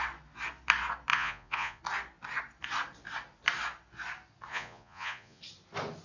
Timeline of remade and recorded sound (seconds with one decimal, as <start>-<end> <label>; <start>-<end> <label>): 0.0-1.1 recorded; 1.1-1.8 remade; 1.8-4.5 recorded; 4.5-5.4 remade; 5.4-6.0 recorded